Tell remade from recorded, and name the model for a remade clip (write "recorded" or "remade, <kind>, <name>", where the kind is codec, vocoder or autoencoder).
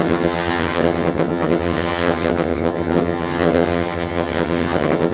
remade, vocoder, HiFi-GAN